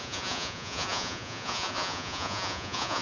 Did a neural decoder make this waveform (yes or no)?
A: yes